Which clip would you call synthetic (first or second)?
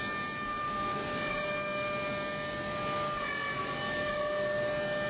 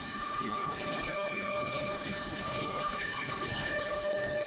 second